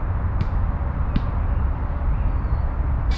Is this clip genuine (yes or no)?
yes